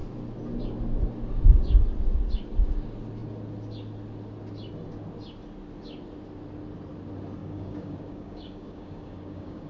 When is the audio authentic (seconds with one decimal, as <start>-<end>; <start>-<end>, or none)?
0.0-7.4